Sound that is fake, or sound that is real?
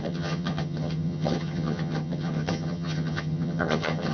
fake